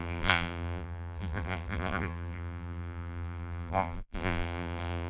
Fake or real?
fake